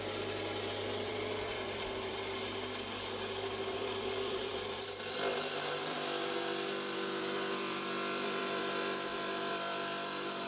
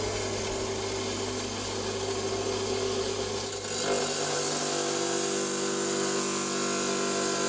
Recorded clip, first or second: second